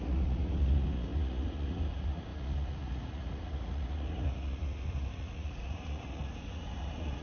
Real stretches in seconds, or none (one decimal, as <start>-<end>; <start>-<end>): none